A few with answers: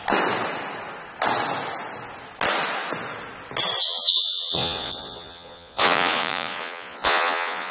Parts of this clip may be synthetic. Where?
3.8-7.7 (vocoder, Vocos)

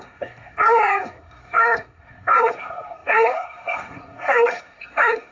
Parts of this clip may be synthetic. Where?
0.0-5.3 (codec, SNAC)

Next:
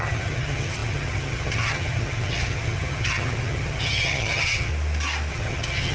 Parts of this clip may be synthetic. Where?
0.0-4.7 (vocoder, HiFi-GAN); 5.3-5.9

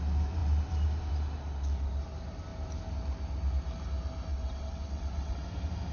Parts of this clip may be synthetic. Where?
4.3-5.4 (vocoder, WaveNeXt)